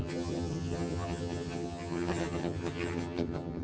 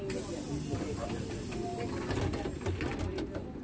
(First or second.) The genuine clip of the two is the second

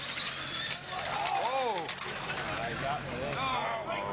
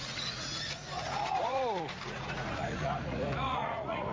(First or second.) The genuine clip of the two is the first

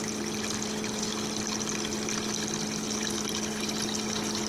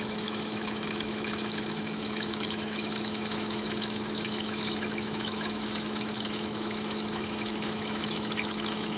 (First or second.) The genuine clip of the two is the first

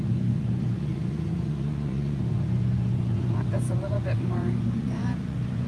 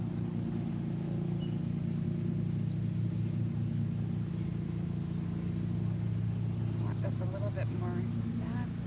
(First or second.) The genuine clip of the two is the second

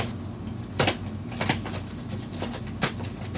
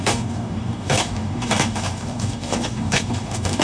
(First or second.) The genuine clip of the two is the first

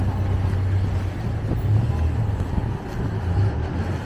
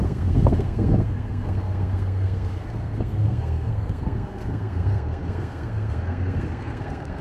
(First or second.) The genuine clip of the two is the first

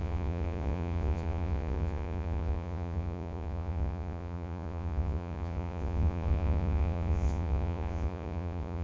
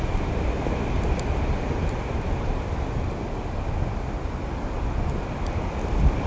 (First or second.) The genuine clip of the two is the second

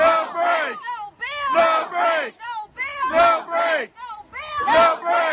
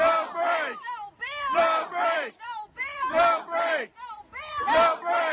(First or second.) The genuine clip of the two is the first